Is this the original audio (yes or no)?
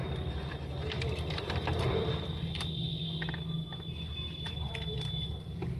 yes